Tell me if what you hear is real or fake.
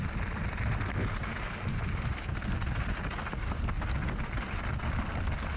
real